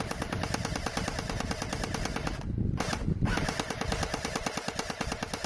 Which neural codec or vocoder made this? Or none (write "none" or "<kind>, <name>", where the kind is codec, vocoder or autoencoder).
none